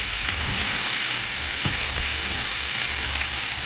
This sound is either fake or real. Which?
fake